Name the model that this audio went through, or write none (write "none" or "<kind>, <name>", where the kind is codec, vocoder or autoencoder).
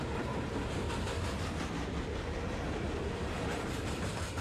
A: none